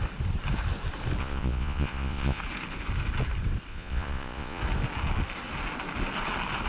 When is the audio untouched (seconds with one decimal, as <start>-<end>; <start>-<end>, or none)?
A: 0.0-1.2; 2.4-3.7; 4.6-6.7